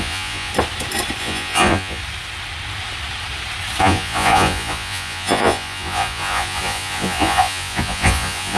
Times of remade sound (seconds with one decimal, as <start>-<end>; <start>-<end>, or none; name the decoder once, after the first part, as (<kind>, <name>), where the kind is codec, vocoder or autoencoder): 0.0-0.5 (vocoder, Vocos); 1.2-2.0; 3.8-8.6

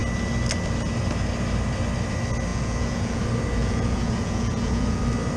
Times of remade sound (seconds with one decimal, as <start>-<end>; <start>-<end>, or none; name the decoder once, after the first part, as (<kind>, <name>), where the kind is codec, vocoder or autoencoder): 2.5-3.2 (vocoder, Vocos); 3.6-5.0

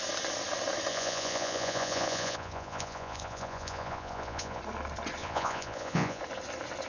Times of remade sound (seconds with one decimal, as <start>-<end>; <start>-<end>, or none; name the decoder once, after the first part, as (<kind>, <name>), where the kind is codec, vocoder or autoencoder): 0.9-4.6 (vocoder, Vocos); 5.2-6.2

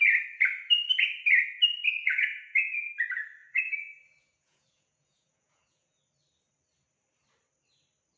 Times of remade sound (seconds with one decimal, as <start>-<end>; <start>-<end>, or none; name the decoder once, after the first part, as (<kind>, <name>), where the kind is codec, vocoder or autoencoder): 2.0-2.9 (vocoder, Vocos); 3.4-6.0

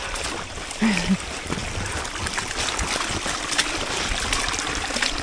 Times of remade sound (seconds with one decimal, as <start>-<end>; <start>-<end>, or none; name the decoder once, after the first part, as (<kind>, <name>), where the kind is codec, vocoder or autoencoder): none